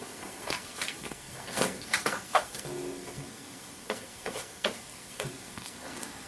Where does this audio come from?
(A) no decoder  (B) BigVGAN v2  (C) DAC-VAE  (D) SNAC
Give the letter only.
D